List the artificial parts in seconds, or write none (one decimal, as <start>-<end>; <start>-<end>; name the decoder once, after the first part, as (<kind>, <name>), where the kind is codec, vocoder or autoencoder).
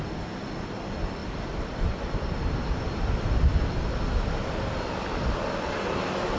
none